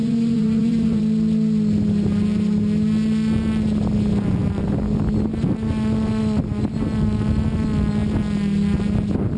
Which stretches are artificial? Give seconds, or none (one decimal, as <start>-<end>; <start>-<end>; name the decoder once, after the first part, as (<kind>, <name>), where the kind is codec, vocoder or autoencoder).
0.0-1.0 (vocoder, Vocos)